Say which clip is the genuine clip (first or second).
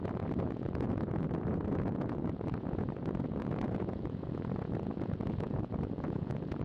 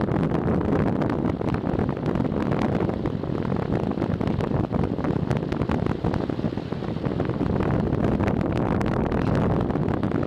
second